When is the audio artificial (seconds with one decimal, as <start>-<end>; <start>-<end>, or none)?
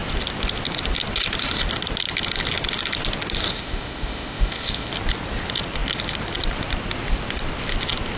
3.5-4.9